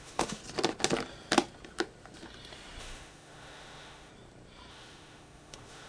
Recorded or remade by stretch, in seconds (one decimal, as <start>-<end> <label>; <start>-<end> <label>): 0.0-0.4 remade; 0.4-2.8 recorded; 2.8-4.1 remade; 4.1-4.7 recorded; 4.7-5.9 remade